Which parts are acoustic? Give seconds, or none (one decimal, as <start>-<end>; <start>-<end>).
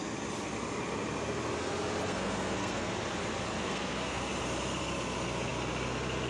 0.0-2.0; 2.9-3.6; 4.2-6.3